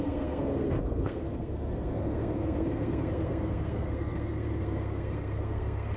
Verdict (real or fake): fake